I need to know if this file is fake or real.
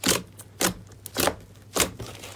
real